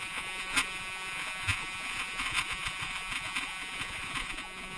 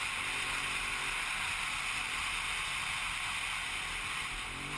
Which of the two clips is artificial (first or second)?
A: first